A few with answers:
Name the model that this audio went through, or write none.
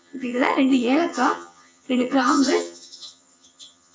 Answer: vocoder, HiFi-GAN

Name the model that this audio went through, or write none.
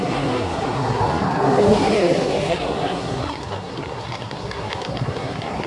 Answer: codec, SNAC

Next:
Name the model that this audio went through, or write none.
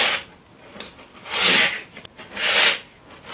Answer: none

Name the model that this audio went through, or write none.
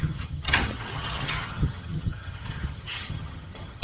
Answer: vocoder, HiFi-GAN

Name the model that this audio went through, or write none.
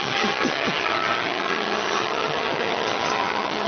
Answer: vocoder, HiFi-GAN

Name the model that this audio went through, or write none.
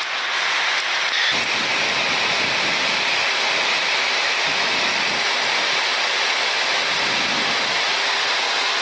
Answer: none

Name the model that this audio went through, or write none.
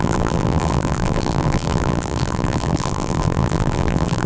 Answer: vocoder, BigVGAN v2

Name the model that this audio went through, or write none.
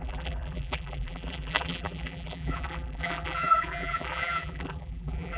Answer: vocoder, BigVGAN v2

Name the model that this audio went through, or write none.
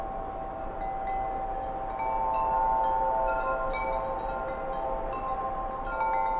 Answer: none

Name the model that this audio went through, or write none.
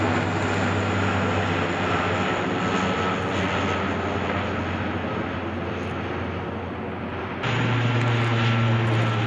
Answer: none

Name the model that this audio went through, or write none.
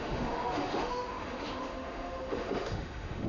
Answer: autoencoder, DAC-VAE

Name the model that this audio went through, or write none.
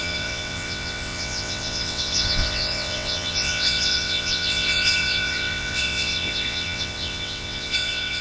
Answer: vocoder, WaveNeXt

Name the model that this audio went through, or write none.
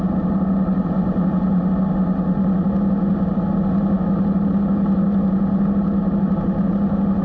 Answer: none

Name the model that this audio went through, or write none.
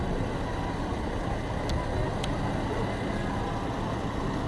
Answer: none